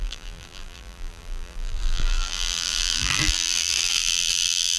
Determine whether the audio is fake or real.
fake